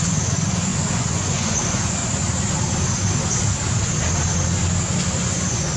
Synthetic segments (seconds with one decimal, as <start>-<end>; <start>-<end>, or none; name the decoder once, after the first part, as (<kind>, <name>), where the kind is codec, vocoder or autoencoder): 0.0-2.0 (vocoder, Vocos); 5.0-5.8